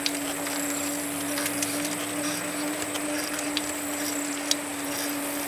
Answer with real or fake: real